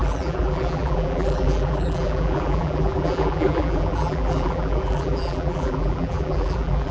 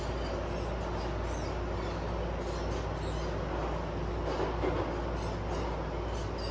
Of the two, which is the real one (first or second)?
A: second